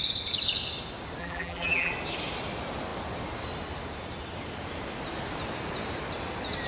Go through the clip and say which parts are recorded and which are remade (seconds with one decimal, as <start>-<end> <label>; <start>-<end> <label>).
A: 0.0-1.2 recorded; 1.2-1.9 remade; 1.9-6.7 recorded